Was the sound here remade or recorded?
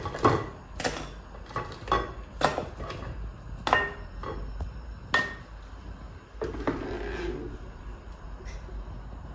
recorded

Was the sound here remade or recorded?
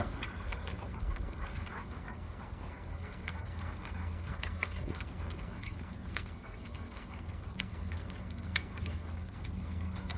remade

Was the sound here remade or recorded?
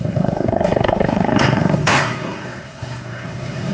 remade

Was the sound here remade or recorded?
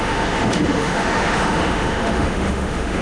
remade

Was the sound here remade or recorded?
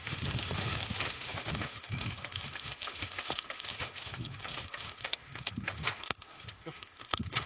remade